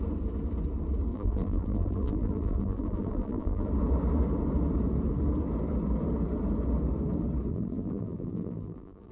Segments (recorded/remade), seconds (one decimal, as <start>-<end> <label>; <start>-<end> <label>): 0.0-1.1 recorded; 1.1-3.7 remade; 3.7-7.5 recorded; 7.5-9.1 remade